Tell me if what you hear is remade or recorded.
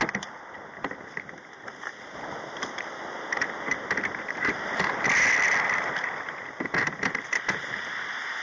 recorded